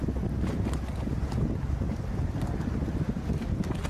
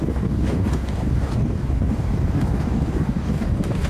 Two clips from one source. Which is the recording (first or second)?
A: first